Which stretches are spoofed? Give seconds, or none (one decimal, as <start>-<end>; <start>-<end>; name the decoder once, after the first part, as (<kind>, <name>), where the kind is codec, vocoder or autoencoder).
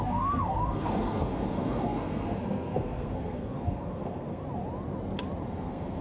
0.0-4.4 (codec, SNAC); 5.5-6.0